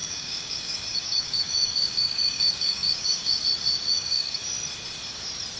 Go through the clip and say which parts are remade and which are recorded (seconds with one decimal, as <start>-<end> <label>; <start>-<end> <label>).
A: 0.0-3.4 remade; 3.4-3.9 recorded; 3.9-4.4 remade; 4.4-5.6 recorded

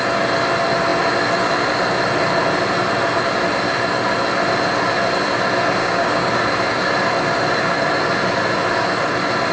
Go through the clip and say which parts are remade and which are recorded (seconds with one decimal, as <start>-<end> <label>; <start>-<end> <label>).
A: 0.0-5.8 recorded; 5.8-6.3 remade; 6.3-9.5 recorded

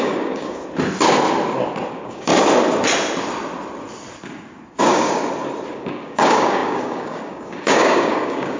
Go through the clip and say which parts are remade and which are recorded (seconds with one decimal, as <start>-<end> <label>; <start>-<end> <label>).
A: 0.0-0.6 remade; 0.6-1.9 recorded; 1.9-2.3 remade; 2.3-4.8 recorded; 4.8-5.2 remade; 5.2-5.7 recorded; 5.7-8.6 remade

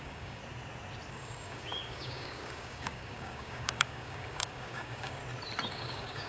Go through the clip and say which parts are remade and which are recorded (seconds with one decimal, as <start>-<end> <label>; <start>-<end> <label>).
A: 0.0-0.4 remade; 0.4-1.1 recorded; 1.1-5.2 remade; 5.2-5.7 recorded; 5.7-6.3 remade

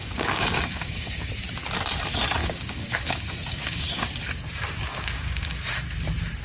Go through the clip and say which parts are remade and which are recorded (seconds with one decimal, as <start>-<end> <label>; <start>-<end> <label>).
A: 0.0-1.3 remade; 1.3-2.4 recorded; 2.4-3.9 remade; 3.9-4.9 recorded; 4.9-5.6 remade; 5.6-6.4 recorded

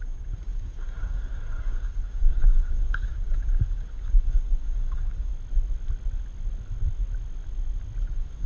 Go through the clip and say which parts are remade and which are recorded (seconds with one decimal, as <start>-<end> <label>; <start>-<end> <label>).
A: 0.0-5.3 remade; 5.3-8.0 recorded; 8.0-8.5 remade

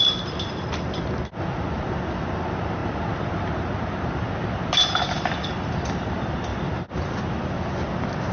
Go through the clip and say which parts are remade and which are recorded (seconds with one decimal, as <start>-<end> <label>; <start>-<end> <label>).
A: 0.0-8.3 recorded